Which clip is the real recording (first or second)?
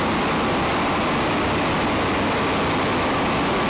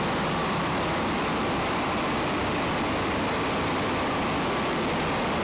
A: first